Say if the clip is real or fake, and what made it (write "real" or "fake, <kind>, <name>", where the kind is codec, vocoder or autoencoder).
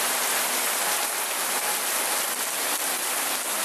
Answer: real